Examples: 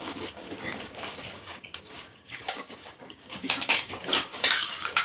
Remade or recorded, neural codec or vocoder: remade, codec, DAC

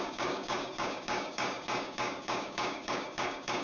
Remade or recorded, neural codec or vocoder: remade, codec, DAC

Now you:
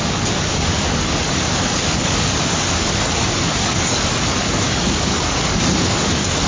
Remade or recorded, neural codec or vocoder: remade, codec, DAC